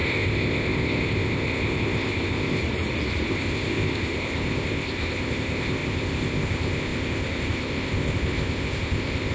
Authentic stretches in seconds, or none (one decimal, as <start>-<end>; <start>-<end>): 2.6-3.3